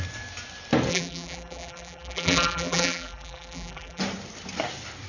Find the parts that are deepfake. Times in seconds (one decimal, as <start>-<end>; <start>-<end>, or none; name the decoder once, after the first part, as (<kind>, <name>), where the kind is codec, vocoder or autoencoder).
0.9-4.0 (vocoder, BigVGAN v2)